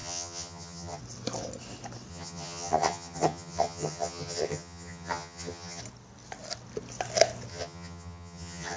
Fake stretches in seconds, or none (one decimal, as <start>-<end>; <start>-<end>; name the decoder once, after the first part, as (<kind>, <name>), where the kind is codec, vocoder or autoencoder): 0.0-1.0 (vocoder, HiFi-GAN); 2.1-5.8; 7.5-8.8